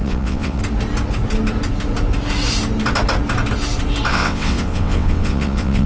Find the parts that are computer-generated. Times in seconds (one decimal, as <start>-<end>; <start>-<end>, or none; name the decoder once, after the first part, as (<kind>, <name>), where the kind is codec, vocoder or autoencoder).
0.0-0.6 (vocoder, WaveNeXt); 4.1-5.9